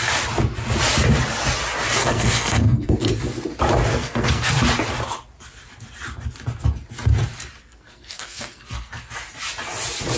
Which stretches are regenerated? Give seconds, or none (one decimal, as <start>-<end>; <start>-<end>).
2.0-3.1; 3.9-4.5; 7.6-9.1